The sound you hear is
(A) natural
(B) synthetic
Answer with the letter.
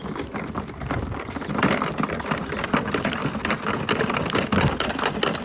A